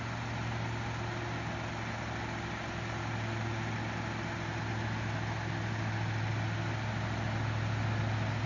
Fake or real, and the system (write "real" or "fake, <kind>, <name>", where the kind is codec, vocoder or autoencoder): real